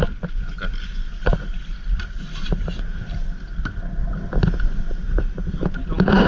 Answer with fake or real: real